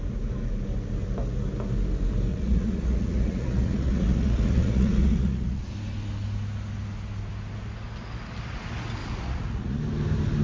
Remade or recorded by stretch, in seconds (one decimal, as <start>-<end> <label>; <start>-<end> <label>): 0.0-2.3 recorded; 2.3-5.7 remade; 5.7-9.0 recorded; 9.0-9.8 remade; 9.8-10.4 recorded

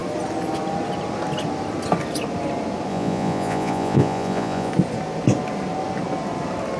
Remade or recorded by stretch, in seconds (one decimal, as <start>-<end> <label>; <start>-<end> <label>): 0.0-2.9 recorded; 2.9-4.7 remade; 4.7-6.8 recorded

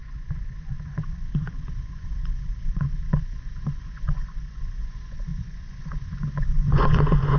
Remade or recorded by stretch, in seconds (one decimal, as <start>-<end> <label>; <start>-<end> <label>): 0.0-7.4 remade

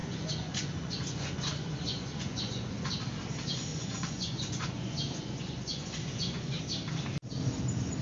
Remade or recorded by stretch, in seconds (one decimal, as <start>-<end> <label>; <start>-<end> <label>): 0.0-2.9 remade; 2.9-3.7 recorded; 3.7-6.6 remade; 6.6-8.0 recorded

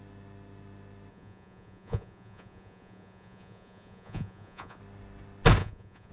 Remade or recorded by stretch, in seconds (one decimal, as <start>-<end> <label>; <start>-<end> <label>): 0.0-1.1 recorded; 1.1-4.8 remade; 4.8-5.6 recorded; 5.6-6.1 remade

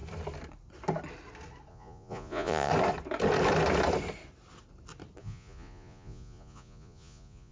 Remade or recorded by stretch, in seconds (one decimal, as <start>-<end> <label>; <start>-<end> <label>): 0.0-1.7 recorded; 1.7-2.7 remade; 2.7-5.2 recorded; 5.2-7.5 remade